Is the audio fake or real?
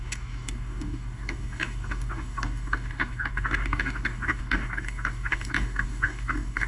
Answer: fake